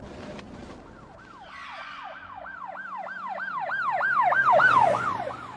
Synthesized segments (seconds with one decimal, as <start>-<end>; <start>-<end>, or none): 1.7-2.7; 4.8-5.6